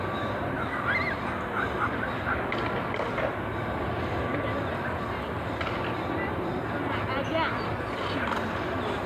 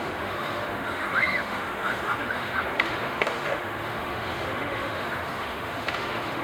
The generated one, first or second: second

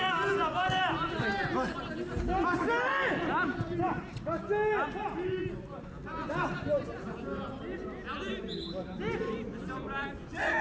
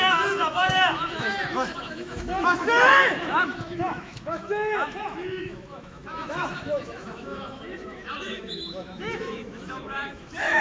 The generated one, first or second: second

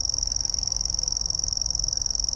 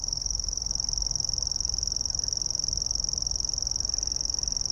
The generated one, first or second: first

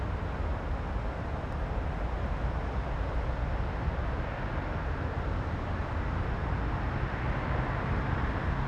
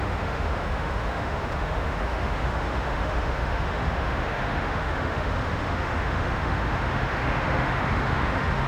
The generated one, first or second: second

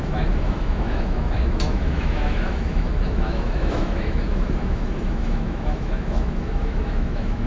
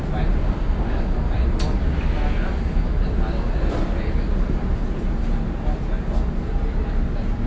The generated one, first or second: first